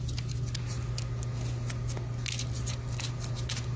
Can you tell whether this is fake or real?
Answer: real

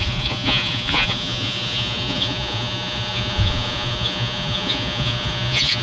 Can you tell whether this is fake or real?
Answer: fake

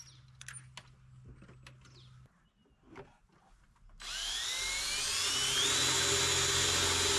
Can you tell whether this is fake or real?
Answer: real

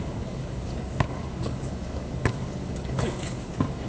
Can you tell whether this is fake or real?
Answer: fake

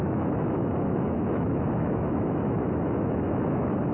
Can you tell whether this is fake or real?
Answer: fake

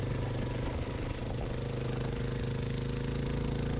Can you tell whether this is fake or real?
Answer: real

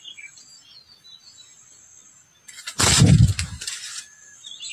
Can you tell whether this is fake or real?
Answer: real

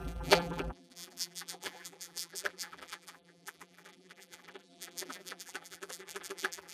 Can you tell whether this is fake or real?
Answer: fake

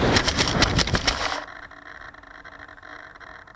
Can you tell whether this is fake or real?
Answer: fake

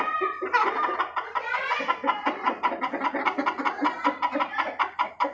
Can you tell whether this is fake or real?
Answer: real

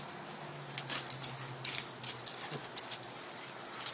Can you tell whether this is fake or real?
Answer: real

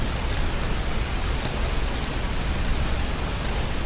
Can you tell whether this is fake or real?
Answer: real